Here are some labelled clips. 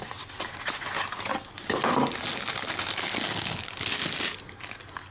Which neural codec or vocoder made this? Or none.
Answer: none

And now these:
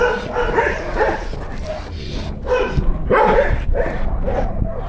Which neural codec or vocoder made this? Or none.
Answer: none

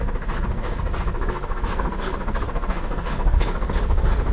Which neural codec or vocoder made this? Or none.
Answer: codec, SNAC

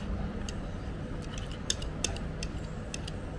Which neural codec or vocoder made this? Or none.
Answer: none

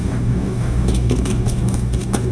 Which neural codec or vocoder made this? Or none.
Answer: codec, DAC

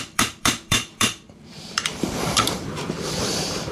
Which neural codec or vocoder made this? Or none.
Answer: vocoder, BigVGAN v2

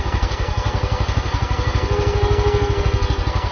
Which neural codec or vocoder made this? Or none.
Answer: codec, SNAC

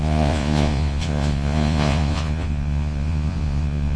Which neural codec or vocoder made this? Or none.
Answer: vocoder, Vocos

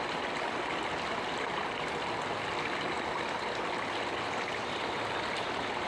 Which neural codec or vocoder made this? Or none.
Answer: none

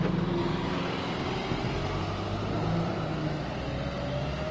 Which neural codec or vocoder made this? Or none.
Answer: none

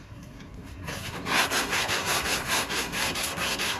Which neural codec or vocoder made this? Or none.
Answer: codec, SNAC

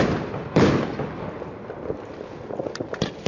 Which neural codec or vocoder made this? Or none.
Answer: none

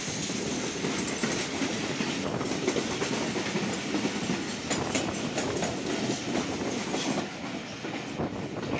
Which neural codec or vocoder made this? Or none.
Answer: none